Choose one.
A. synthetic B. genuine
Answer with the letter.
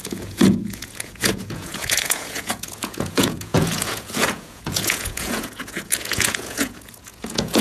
A